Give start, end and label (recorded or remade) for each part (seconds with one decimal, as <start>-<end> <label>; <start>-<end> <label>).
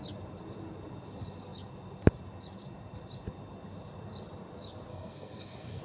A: 0.0-4.9 recorded; 4.9-5.8 remade